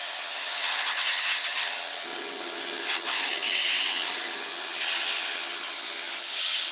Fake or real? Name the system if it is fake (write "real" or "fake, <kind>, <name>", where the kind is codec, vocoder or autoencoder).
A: fake, vocoder, HiFi-GAN